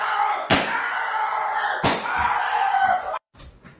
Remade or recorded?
remade